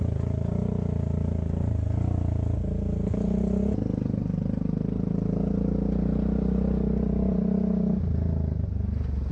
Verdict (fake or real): real